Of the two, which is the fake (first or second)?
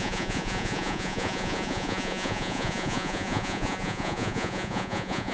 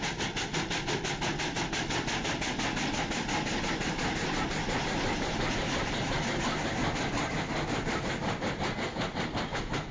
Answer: first